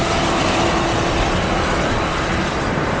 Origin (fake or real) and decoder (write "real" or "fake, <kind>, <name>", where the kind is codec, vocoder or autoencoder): real